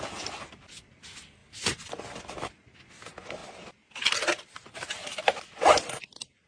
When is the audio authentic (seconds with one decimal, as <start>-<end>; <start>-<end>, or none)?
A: 0.0-6.5